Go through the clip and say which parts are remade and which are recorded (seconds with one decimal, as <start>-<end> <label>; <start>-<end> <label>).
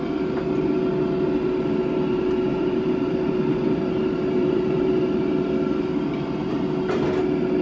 0.0-2.5 recorded; 2.5-4.9 remade; 4.9-7.6 recorded